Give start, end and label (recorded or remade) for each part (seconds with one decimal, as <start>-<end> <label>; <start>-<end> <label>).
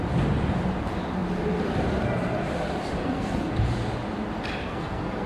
0.0-3.0 recorded; 3.0-3.5 remade; 3.5-4.6 recorded; 4.6-5.3 remade